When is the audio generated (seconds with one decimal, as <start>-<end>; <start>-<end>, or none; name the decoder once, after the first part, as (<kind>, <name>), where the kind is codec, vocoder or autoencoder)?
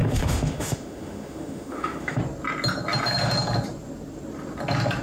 0.0-2.2 (autoencoder, DAC-VAE)